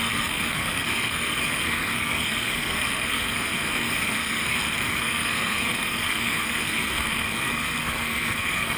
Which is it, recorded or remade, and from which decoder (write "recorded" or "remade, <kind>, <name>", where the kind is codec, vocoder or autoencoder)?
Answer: remade, codec, SNAC